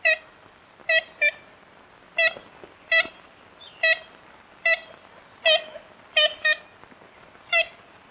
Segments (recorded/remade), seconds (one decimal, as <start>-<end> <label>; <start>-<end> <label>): 0.0-8.1 recorded